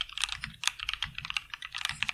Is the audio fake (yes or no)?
no